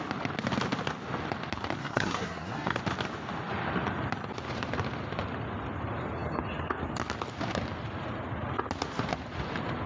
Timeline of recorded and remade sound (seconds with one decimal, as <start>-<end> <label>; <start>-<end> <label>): 0.0-1.8 recorded; 1.8-2.8 remade; 2.8-9.9 recorded